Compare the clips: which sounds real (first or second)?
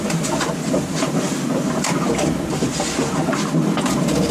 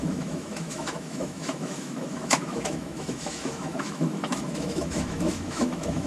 first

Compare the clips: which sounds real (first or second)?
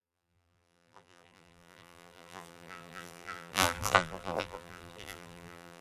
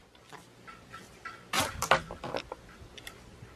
second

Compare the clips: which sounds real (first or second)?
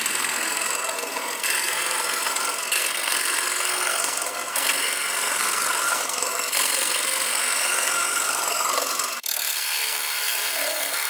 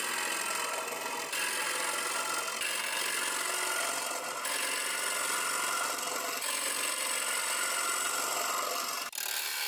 second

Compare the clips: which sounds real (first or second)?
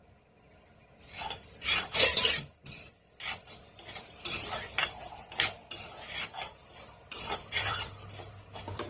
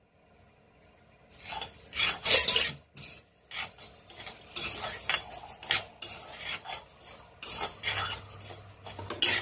second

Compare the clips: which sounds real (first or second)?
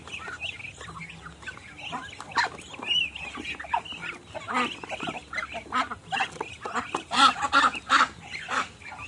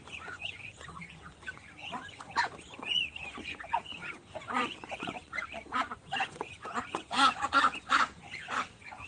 first